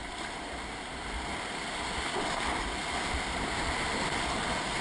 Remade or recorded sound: recorded